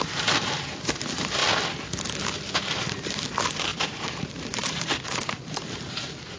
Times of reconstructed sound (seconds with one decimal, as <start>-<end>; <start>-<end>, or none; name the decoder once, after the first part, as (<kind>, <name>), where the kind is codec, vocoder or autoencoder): 0.0-1.4 (vocoder, BigVGAN v2); 2.2-6.4